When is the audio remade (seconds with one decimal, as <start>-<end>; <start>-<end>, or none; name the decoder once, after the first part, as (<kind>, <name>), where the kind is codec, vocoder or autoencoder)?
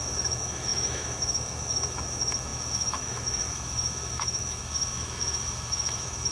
0.0-6.3 (autoencoder, DAC-VAE)